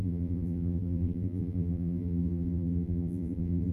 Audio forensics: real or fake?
fake